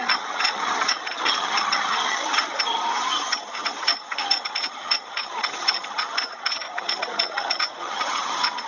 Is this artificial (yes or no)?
yes